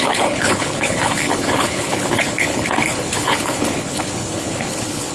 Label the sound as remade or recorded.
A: remade